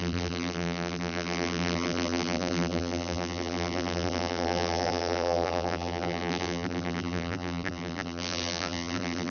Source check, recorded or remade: remade